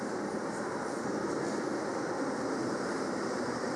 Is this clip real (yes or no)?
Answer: yes